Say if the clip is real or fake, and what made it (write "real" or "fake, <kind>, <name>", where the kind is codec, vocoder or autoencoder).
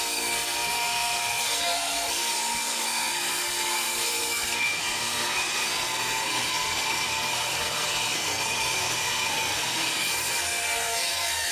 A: fake, codec, SNAC